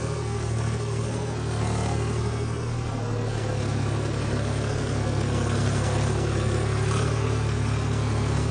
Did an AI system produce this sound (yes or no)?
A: yes